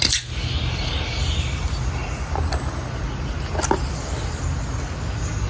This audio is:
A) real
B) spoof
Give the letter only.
A